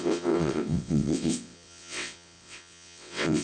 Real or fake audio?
fake